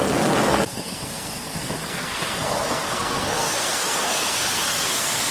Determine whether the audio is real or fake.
fake